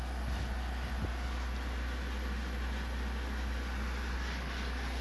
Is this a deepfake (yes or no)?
no